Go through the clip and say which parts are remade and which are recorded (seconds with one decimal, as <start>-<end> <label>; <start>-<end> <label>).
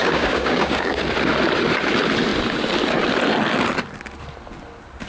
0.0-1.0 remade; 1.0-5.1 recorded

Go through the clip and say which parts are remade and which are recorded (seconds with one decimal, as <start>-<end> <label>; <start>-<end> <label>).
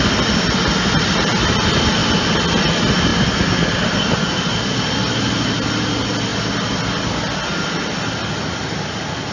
0.0-9.3 recorded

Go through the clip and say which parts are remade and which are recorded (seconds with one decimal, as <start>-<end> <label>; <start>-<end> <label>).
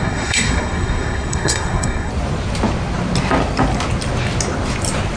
0.0-2.1 remade; 2.1-5.2 recorded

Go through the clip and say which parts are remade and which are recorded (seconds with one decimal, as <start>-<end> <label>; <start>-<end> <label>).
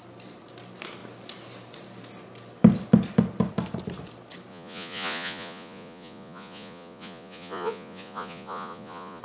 0.0-4.5 recorded; 4.5-9.2 remade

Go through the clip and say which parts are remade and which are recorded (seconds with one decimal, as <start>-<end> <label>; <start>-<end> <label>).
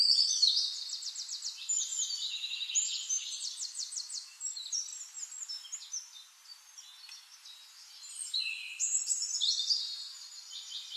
0.0-1.9 remade; 1.9-2.7 recorded; 2.7-4.9 remade; 4.9-9.7 recorded; 9.7-11.0 remade